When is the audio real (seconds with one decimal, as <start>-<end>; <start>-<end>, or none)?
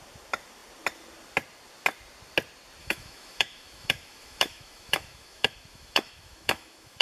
0.0-2.8